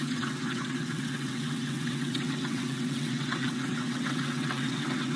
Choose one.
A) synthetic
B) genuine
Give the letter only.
A